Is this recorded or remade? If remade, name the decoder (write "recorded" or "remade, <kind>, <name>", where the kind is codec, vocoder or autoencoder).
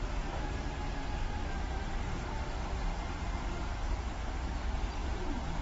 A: remade, vocoder, BigVGAN v2